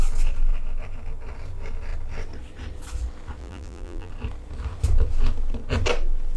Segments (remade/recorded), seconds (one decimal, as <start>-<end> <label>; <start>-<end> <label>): 0.0-3.4 recorded; 3.4-4.1 remade; 4.1-6.4 recorded